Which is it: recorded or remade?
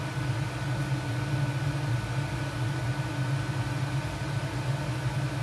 recorded